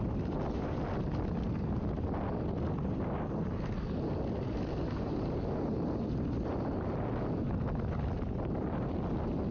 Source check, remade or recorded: recorded